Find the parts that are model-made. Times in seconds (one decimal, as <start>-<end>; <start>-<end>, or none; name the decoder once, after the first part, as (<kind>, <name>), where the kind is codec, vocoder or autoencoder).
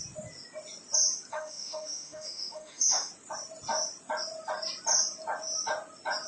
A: 1.3-3.1 (autoencoder, DAC-VAE)